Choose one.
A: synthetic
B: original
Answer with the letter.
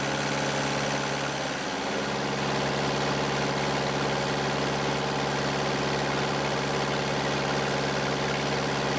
B